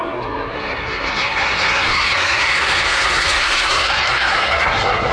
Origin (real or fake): fake